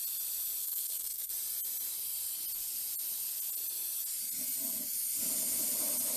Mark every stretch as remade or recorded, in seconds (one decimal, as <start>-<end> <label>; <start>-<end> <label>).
0.0-0.6 recorded; 0.6-1.3 remade; 1.3-6.2 recorded